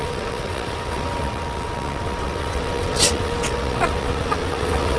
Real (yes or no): no